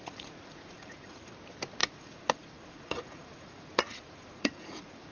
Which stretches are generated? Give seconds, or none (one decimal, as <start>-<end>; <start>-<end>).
0.0-1.3; 1.8-5.1